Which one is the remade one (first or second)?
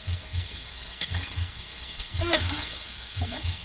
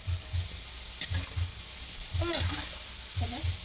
first